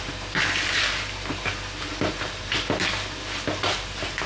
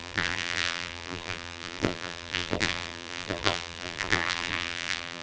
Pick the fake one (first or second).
second